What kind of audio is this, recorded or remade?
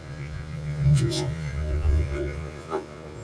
remade